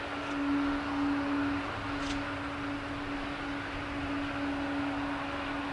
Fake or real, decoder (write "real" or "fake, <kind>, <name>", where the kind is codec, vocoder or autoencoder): real